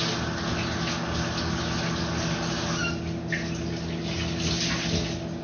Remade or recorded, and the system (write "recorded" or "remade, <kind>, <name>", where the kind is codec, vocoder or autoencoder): recorded